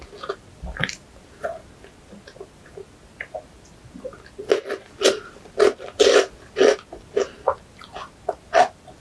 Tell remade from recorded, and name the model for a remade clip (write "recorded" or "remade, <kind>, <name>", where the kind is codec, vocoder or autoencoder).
recorded